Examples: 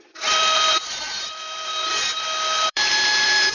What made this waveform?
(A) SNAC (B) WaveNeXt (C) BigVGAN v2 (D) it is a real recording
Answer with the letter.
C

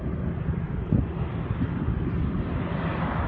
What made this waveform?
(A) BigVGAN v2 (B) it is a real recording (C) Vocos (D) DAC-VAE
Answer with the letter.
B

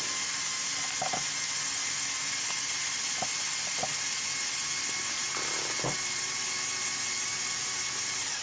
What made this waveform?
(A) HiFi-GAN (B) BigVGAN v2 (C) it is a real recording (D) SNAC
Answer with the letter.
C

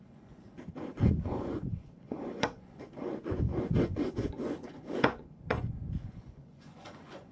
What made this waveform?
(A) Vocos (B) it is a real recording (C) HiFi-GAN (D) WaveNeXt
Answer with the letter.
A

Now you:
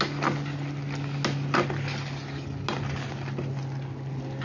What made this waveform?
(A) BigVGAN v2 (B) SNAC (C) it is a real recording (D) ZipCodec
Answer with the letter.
C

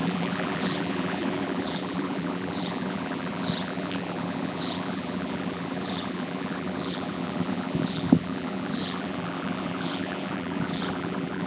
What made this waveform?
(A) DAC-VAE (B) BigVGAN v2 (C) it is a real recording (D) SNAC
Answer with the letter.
B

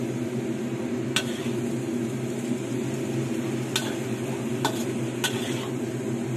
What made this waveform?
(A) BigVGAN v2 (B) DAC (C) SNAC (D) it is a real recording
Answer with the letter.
D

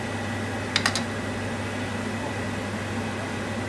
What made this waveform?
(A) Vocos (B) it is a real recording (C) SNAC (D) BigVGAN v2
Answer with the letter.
B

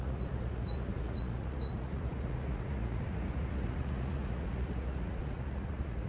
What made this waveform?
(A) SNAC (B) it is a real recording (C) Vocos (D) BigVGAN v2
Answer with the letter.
C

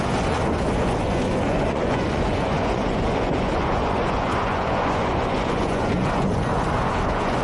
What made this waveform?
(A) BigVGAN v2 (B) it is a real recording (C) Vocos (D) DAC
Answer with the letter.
C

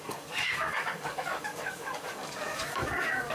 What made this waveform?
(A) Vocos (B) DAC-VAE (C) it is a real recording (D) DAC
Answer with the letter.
D